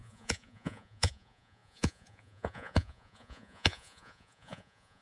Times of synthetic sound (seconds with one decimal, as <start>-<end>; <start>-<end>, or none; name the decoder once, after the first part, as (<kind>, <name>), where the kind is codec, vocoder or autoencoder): 0.0-5.0 (vocoder, Vocos)